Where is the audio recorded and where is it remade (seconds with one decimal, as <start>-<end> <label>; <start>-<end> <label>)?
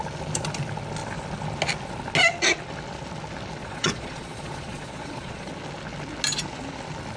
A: 0.0-3.6 recorded; 3.6-5.5 remade; 5.5-7.2 recorded